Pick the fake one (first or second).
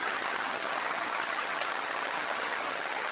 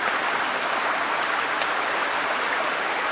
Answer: first